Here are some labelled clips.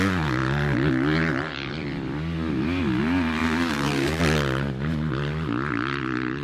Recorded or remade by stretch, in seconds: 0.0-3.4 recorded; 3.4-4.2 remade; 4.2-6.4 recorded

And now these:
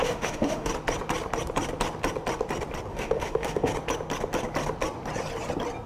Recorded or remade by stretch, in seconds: 0.0-0.7 remade; 0.7-2.9 recorded; 2.9-3.7 remade; 3.7-5.9 recorded

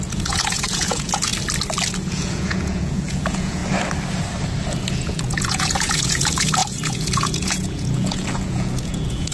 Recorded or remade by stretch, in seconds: 0.0-1.3 remade; 1.3-2.1 recorded; 2.1-3.6 remade; 3.6-4.9 recorded; 4.9-9.3 remade

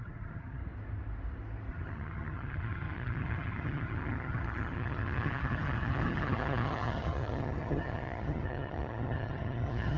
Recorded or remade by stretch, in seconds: 0.0-0.6 remade; 0.6-1.7 recorded; 1.7-10.0 remade

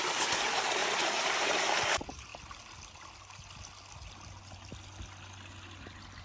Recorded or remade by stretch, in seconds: 0.0-2.3 remade; 2.3-6.2 recorded

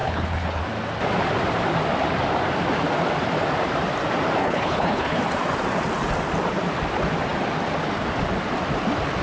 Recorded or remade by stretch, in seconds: 0.0-0.6 remade; 0.6-4.4 recorded; 4.4-5.2 remade; 5.2-9.2 recorded